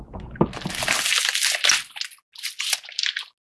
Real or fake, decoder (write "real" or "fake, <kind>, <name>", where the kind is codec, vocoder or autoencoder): real